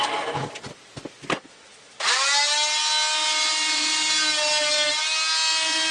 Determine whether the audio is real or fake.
real